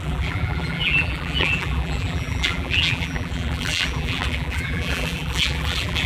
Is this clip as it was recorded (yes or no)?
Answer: no